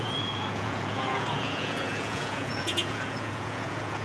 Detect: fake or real fake